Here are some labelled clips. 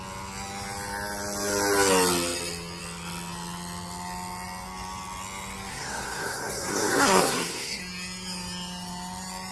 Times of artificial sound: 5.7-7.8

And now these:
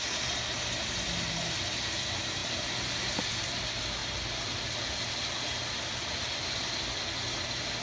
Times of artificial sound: none

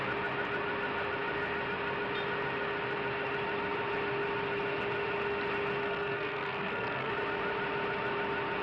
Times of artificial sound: 5.8-7.1

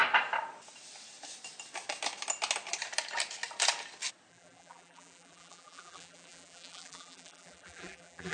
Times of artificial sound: 4.3-8.3

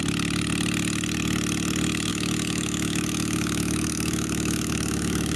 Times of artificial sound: 2.1-5.4

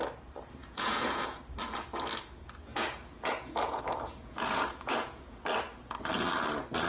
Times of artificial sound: 0.6-1.4; 2.7-5.4

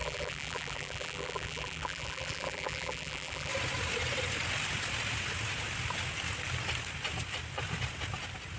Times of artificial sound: 0.0-3.5